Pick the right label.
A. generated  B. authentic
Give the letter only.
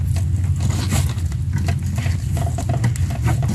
B